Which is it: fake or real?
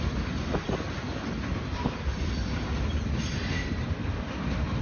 real